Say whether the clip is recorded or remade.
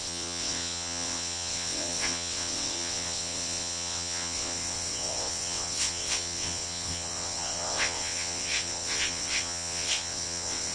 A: remade